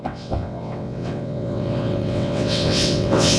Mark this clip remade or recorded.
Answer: remade